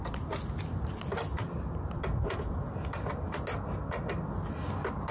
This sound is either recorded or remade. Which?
recorded